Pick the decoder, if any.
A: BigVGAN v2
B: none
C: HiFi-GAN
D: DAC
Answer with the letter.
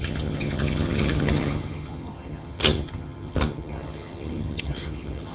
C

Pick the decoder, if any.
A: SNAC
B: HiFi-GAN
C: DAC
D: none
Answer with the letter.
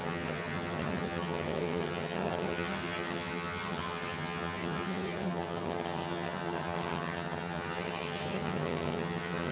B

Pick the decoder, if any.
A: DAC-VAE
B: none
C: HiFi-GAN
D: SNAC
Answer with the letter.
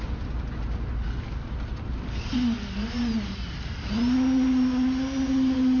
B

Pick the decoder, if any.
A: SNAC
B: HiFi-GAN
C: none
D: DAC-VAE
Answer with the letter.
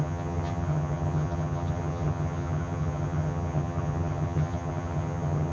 B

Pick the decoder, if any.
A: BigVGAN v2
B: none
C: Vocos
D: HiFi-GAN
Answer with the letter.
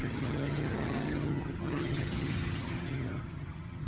D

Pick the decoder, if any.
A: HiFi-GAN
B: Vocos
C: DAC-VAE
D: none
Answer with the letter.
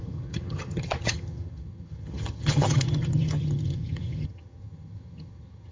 A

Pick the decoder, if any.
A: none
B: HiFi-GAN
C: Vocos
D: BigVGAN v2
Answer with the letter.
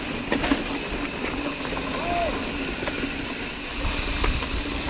A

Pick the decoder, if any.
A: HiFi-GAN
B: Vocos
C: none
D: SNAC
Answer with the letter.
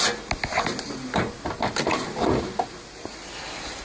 C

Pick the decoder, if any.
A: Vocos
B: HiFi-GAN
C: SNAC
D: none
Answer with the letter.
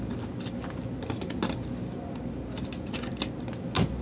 D